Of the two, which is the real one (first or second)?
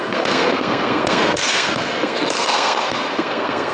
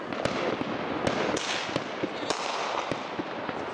second